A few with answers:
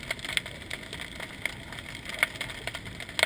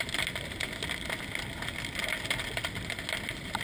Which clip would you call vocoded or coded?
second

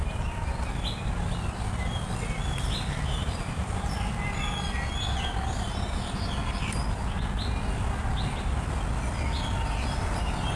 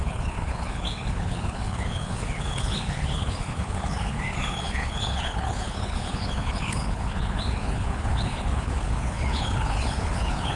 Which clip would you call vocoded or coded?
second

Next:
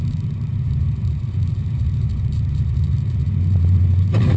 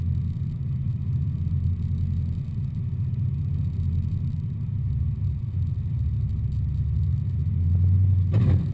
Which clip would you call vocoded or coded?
first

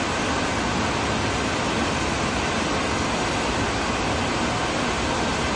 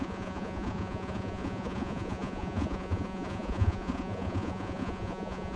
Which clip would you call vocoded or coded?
second